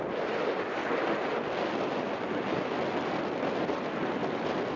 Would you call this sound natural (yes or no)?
yes